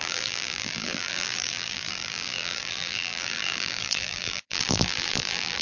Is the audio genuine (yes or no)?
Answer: no